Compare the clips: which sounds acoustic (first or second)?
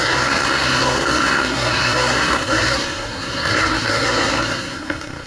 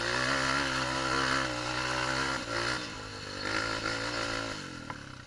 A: second